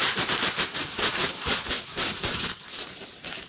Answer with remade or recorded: remade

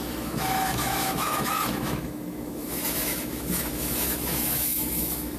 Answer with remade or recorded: remade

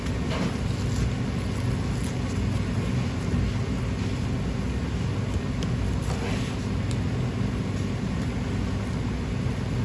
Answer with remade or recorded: recorded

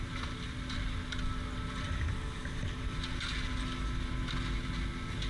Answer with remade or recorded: recorded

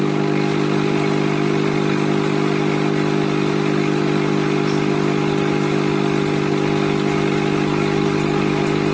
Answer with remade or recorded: recorded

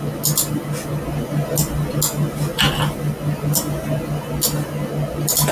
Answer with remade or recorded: recorded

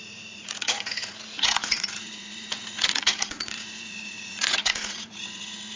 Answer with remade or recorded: remade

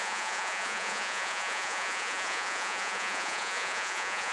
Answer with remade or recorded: remade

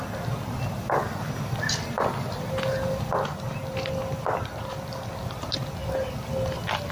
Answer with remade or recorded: recorded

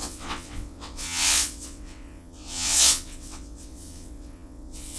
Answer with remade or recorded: remade